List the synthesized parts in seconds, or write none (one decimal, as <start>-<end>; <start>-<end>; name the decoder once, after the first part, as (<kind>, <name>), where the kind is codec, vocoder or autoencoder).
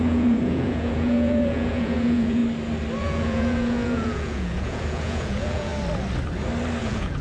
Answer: 0.0-2.4 (vocoder, Vocos); 3.0-5.7; 6.8-7.2